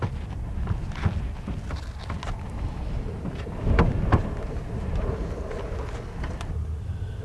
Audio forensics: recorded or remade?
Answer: recorded